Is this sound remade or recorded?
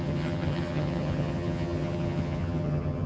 remade